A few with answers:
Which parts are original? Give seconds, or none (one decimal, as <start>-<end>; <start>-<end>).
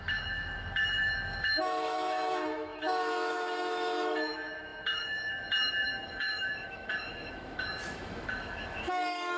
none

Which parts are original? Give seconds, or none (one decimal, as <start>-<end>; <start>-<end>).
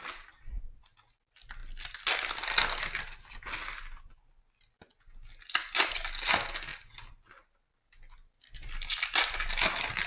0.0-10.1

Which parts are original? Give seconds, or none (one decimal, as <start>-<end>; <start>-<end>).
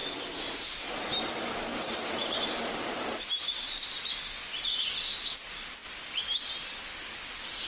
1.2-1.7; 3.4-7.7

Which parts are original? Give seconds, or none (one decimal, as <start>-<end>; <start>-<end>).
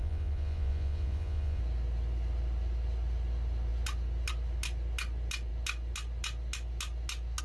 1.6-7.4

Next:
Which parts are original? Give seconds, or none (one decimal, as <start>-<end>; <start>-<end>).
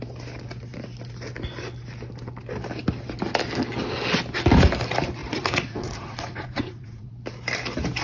0.0-5.2; 7.1-8.0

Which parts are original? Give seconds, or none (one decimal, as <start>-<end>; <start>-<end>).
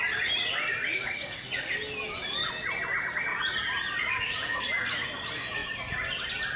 0.0-0.9; 1.7-3.3; 4.6-6.6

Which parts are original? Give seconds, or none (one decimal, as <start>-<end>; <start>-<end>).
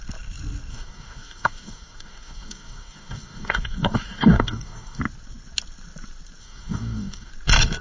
0.0-0.7; 5.0-6.4; 7.3-7.8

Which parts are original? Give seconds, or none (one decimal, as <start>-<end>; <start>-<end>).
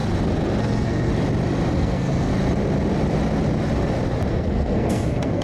0.0-0.6; 1.1-1.7; 2.3-4.3